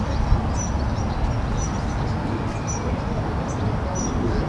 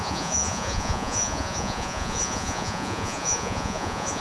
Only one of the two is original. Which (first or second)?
first